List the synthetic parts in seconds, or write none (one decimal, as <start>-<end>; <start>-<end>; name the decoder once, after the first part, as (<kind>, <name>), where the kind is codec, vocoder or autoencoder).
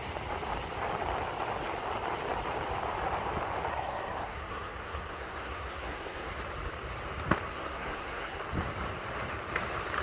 3.7-6.3 (codec, SNAC); 7.5-8.4